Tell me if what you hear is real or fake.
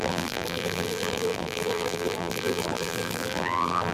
fake